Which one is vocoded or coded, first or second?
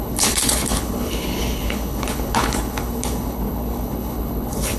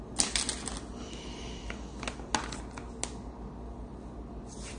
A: first